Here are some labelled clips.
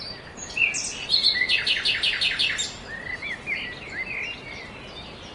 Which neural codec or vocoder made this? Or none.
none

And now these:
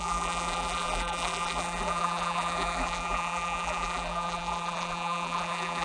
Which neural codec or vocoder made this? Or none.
vocoder, BigVGAN v2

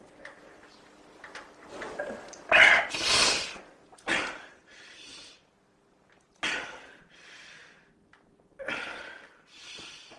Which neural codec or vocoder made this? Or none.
none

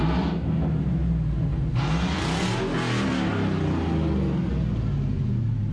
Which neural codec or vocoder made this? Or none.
none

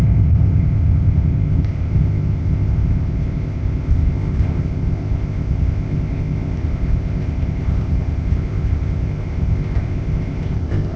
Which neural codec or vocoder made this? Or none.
codec, ZipCodec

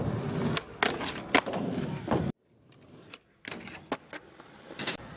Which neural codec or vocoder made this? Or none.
none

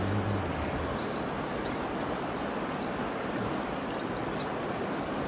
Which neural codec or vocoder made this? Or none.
none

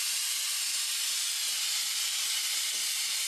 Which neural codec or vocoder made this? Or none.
none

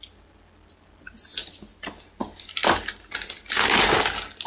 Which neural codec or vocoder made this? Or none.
none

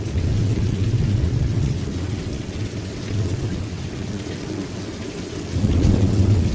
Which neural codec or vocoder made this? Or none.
vocoder, WaveNeXt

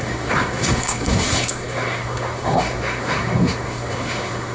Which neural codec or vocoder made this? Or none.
codec, SNAC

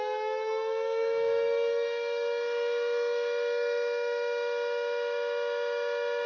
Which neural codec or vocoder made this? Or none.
autoencoder, DAC-VAE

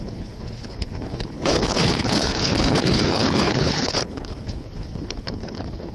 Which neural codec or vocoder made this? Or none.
codec, HILCodec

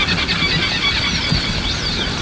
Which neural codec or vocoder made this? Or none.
none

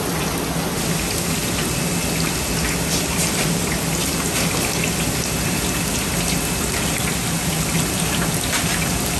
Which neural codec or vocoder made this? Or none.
none